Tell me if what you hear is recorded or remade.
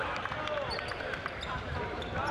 recorded